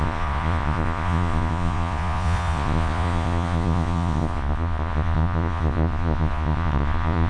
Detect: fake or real fake